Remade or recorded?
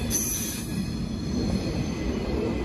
recorded